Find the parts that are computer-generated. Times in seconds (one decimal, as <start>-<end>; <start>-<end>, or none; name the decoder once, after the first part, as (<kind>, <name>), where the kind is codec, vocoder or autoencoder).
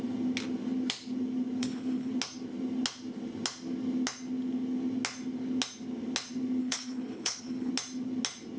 1.6-2.1 (codec, HILCodec); 6.6-7.7